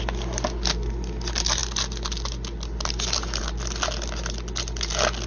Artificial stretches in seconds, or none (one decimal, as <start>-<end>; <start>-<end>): none